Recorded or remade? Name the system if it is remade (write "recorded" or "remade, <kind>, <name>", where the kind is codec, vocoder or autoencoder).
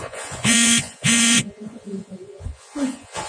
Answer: remade, vocoder, Vocos